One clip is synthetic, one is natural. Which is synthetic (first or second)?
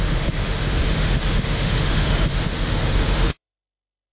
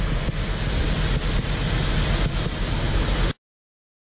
first